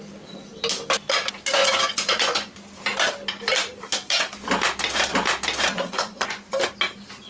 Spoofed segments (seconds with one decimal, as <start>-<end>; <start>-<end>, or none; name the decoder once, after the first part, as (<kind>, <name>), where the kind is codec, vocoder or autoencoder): 1.6-2.5 (vocoder, Vocos); 5.7-6.6

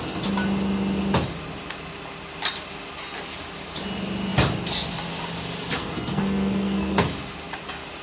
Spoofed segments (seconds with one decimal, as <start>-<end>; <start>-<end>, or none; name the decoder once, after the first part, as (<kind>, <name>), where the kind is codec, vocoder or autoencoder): 5.8-7.1 (codec, SNAC)

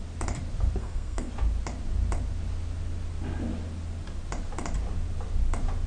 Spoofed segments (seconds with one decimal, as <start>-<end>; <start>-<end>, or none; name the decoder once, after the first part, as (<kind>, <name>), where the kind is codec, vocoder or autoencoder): 0.8-1.3 (codec, SNAC)

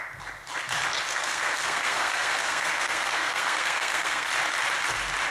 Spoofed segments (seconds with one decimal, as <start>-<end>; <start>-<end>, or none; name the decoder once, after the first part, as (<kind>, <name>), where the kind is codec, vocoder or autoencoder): 1.1-4.3 (codec, SNAC)